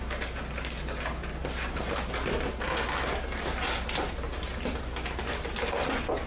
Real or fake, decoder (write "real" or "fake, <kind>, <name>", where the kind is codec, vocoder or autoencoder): real